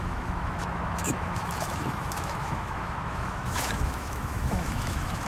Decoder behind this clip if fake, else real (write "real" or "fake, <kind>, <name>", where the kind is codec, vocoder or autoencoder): fake, autoencoder, DAC-VAE